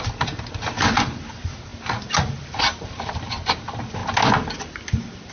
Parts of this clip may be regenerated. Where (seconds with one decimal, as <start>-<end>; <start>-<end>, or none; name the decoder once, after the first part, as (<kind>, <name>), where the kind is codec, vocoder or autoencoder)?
0.0-4.0 (vocoder, BigVGAN v2)